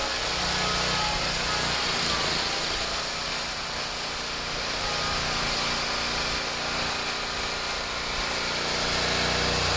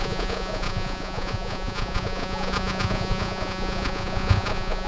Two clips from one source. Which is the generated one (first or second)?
second